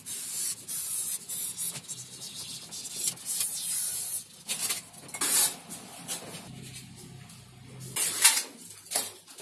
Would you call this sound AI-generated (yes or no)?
no